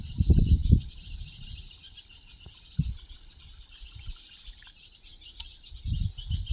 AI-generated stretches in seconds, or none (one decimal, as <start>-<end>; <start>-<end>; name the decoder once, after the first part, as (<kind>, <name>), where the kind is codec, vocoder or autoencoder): none